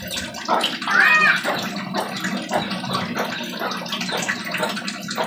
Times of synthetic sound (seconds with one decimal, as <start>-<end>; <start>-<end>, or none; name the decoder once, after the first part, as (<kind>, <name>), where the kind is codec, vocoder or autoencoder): none